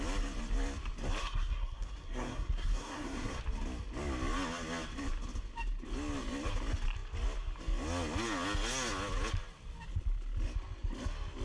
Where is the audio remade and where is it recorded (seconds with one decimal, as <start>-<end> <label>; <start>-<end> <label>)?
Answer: 0.0-1.2 recorded; 1.2-3.4 remade; 3.4-11.4 recorded